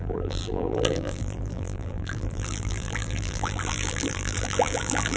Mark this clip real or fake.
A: fake